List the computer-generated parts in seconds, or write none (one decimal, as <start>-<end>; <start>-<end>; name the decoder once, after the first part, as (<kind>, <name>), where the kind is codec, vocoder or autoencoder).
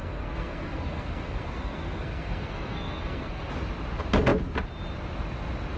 0.0-3.5 (codec, SNAC)